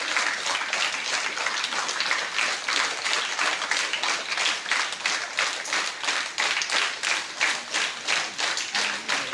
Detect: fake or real real